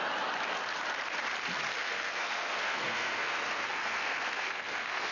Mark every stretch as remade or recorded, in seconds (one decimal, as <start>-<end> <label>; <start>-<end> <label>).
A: 0.0-1.8 recorded; 1.8-5.1 remade